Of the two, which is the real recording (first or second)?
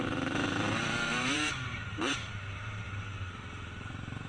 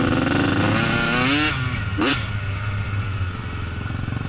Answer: second